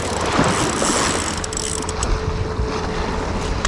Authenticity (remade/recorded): recorded